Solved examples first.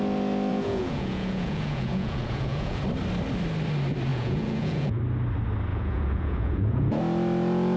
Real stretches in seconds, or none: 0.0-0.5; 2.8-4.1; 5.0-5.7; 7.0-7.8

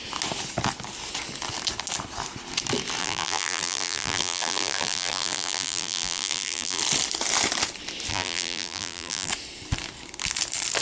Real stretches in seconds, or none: 0.0-3.0; 6.8-8.1; 9.3-10.8

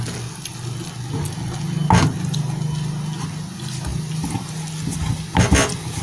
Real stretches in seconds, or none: 0.0-6.0

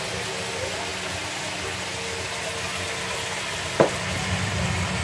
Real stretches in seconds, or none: 0.0-5.0